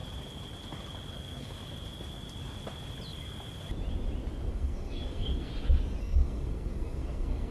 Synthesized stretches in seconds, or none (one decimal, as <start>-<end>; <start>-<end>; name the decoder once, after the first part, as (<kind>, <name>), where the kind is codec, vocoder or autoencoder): 1.1-1.6 (codec, SNAC); 4.5-5.5; 6.0-7.5